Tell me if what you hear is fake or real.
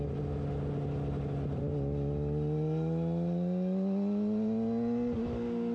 real